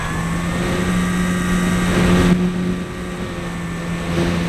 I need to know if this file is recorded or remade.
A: recorded